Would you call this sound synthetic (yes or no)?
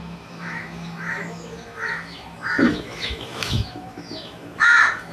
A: yes